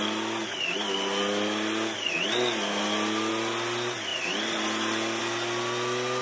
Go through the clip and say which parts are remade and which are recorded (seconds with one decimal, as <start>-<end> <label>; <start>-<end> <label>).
0.0-6.2 recorded